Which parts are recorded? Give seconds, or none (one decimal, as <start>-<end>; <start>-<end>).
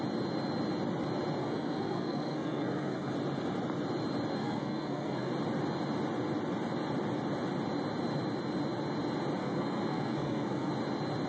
0.0-1.4; 3.1-4.4; 5.3-9.4; 10.7-11.3